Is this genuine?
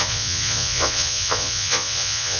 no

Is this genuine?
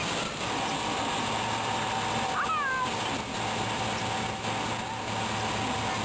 yes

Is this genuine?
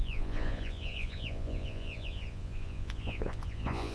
no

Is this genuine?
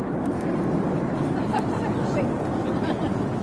yes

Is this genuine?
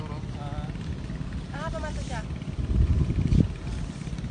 yes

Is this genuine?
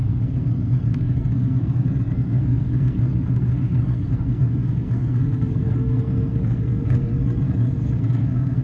no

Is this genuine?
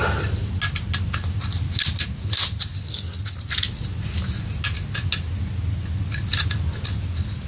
yes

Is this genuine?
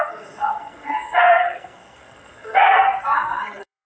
no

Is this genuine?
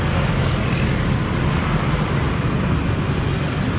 yes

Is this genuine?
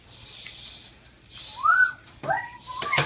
no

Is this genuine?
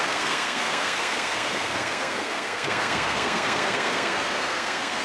no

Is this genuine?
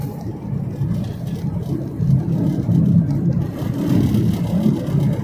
yes